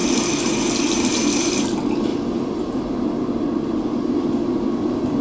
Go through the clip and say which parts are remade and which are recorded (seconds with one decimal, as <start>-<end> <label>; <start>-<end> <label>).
0.0-0.6 remade; 0.6-2.1 recorded; 2.1-5.2 remade